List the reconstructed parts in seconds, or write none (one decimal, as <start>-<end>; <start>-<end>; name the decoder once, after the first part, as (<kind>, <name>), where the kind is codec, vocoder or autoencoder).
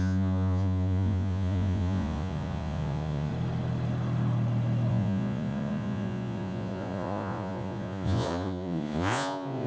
0.0-3.3 (vocoder, Vocos); 4.9-9.7